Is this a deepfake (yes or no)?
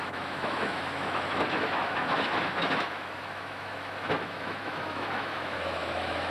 yes